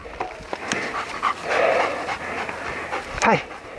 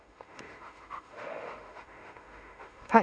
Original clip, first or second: first